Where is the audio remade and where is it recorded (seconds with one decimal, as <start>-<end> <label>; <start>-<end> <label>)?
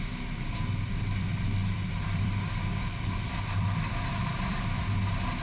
0.0-1.6 recorded; 1.6-4.8 remade; 4.8-5.4 recorded